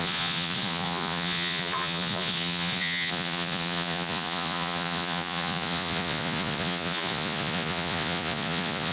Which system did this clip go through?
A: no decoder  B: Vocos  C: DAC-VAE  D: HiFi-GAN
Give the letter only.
B